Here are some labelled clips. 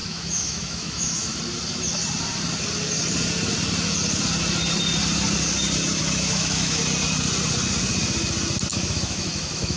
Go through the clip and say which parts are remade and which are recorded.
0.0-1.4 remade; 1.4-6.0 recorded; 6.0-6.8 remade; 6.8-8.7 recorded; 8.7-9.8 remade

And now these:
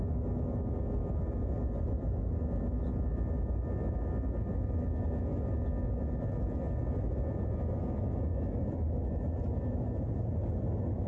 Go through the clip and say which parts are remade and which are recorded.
0.0-11.1 recorded

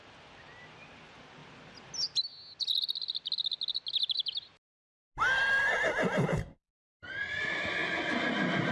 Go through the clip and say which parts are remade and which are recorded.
0.0-8.7 recorded